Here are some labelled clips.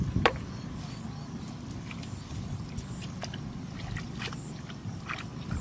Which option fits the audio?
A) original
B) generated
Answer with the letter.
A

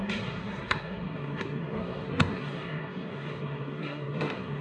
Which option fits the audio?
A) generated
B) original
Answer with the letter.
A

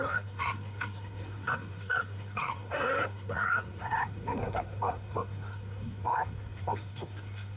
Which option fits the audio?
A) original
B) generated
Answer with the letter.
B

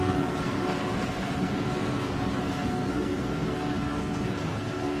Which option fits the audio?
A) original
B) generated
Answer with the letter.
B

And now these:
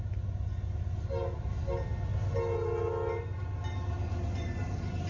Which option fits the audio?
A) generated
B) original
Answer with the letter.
B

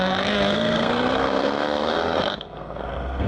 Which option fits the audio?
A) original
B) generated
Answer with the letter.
B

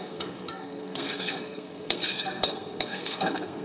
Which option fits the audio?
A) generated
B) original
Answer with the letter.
A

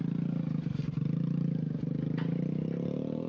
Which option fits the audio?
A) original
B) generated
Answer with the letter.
A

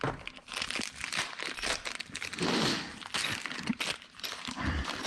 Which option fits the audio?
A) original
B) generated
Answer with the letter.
A